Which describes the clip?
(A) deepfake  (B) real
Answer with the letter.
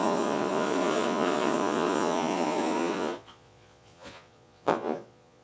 A